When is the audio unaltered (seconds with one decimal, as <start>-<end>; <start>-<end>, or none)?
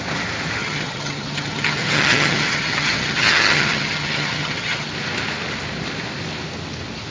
0.0-0.6; 4.9-7.1